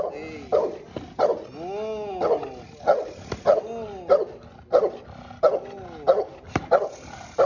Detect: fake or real real